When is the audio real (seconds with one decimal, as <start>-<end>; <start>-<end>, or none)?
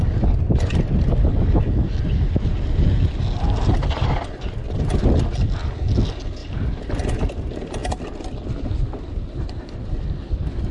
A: 0.0-10.7